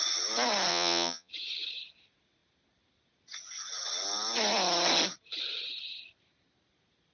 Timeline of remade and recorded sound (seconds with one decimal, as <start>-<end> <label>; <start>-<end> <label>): 0.0-0.7 recorded; 0.7-1.3 remade; 1.3-7.1 recorded